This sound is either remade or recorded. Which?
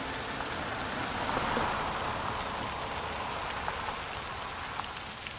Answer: recorded